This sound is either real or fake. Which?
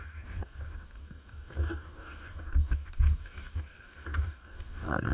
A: fake